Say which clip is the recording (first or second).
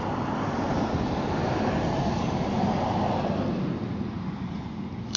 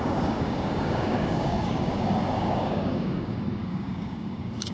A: first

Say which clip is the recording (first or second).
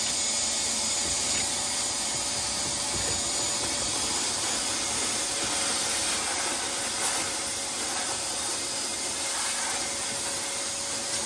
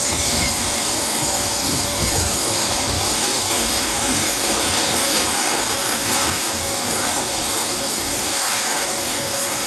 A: first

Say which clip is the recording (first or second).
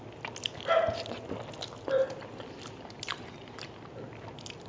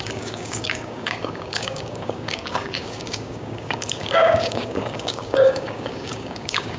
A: first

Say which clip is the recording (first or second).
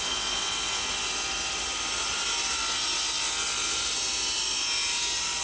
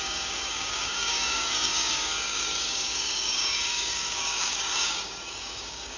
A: first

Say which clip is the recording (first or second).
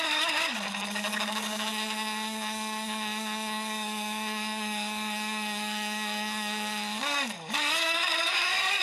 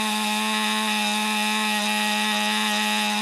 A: second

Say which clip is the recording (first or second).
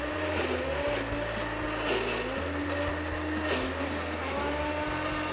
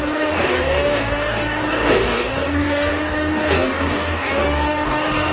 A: first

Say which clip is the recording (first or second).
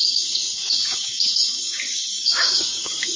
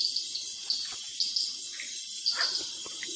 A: second